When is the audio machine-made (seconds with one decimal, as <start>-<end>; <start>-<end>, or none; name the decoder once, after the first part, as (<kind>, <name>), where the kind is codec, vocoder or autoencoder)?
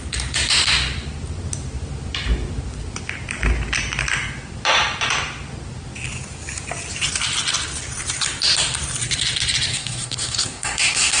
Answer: 9.7-11.2 (codec, SNAC)